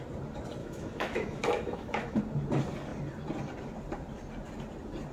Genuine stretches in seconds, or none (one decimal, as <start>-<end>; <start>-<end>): 0.0-0.6; 2.2-5.1